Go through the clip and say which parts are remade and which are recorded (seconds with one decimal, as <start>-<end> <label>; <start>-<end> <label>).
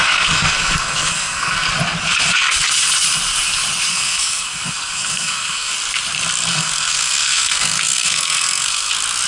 0.0-1.7 remade; 1.7-3.9 recorded; 3.9-5.7 remade; 5.7-6.5 recorded; 6.5-8.9 remade; 8.9-9.3 recorded